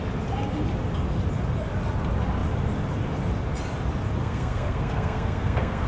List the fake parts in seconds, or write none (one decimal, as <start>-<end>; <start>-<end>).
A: 4.2-5.9

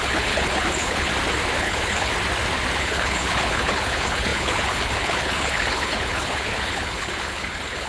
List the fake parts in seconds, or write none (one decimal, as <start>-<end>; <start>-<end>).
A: 0.0-1.1; 1.6-2.1; 2.8-7.9

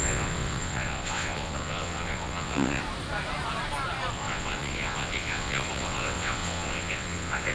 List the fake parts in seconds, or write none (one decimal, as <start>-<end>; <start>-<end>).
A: 0.0-2.8; 4.1-7.5

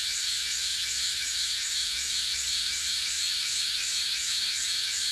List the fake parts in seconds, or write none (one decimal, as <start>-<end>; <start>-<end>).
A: 0.0-5.1

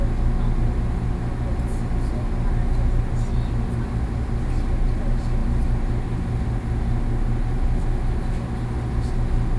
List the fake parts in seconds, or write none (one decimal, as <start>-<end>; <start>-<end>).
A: none

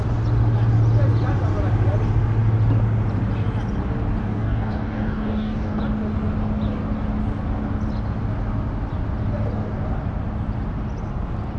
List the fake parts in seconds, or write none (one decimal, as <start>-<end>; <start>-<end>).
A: 4.2-5.8

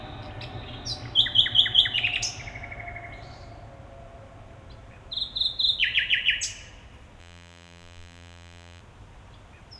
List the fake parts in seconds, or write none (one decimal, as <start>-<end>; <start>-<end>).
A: 7.2-8.8

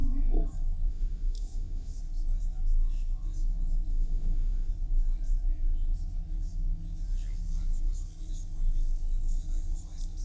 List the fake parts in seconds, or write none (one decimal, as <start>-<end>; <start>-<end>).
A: 0.9-2.0; 3.9-4.7